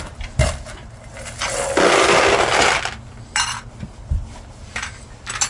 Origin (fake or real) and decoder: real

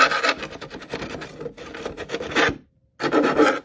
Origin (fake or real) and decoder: real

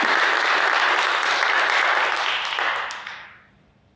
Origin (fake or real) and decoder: real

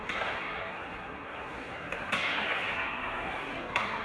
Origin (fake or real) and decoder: fake, codec, SNAC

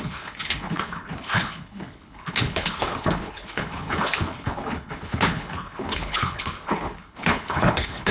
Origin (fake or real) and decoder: fake, codec, HILCodec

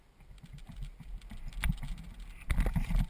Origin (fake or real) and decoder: real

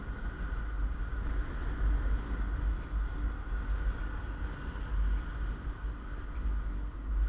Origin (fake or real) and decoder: real